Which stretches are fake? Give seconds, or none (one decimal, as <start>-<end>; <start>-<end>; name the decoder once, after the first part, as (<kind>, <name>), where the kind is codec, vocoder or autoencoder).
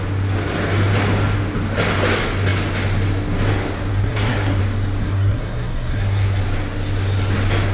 3.9-4.6 (codec, SNAC); 5.0-6.4